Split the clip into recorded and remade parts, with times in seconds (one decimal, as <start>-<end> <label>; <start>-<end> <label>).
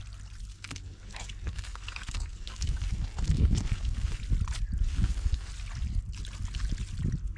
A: 0.0-0.5 recorded; 0.5-4.2 remade; 4.2-4.9 recorded; 4.9-5.5 remade; 5.5-7.4 recorded